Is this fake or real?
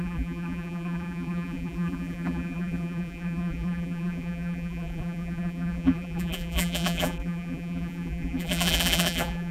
fake